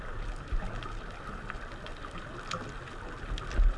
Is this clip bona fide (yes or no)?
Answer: yes